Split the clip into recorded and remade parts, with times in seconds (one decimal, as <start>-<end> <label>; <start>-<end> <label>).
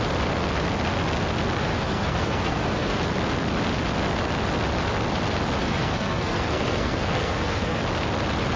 0.0-1.6 recorded; 1.6-3.0 remade; 3.0-5.6 recorded; 5.6-7.8 remade; 7.8-8.6 recorded